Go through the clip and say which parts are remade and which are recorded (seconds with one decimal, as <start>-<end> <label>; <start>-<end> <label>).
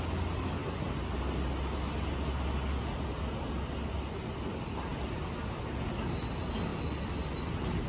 0.0-7.9 recorded